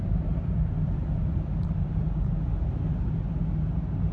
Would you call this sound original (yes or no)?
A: yes